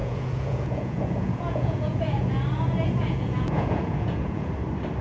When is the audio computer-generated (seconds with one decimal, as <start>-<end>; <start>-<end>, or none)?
0.0-2.4; 3.0-4.5